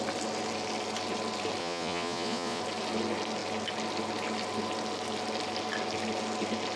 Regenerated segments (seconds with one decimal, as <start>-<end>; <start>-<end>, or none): 1.6-2.6